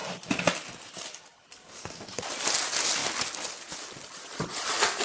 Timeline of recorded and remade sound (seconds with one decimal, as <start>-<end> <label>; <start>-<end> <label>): 0.0-2.4 remade; 2.4-5.0 recorded